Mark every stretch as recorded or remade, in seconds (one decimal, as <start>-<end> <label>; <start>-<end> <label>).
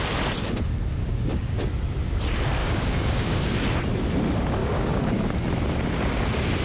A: 0.0-1.0 recorded; 1.0-1.7 remade; 1.7-2.6 recorded; 2.6-3.4 remade; 3.4-4.6 recorded; 4.6-5.2 remade; 5.2-6.6 recorded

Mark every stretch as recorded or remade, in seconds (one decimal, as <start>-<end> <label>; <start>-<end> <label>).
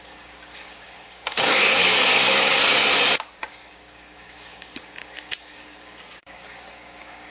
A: 0.0-2.8 remade; 2.8-3.4 recorded; 3.4-7.3 remade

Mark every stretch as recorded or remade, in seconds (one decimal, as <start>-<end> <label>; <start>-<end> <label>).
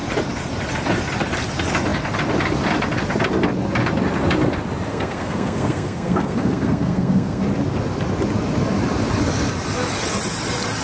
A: 0.0-4.9 recorded; 4.9-7.4 remade; 7.4-10.8 recorded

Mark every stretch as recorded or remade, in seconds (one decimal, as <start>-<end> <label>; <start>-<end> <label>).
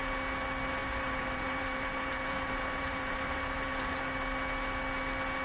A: 0.0-0.8 recorded; 0.8-4.0 remade; 4.0-5.4 recorded